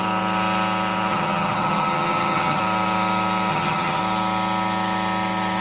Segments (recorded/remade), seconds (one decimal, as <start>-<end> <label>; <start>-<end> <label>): 0.0-1.1 recorded; 1.1-2.6 remade; 2.6-3.5 recorded; 3.5-4.0 remade; 4.0-5.6 recorded